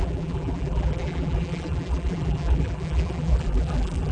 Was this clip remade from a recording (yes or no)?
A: yes